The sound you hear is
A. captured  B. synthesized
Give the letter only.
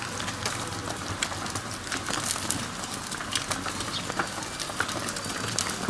A